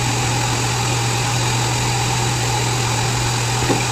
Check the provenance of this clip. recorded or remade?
recorded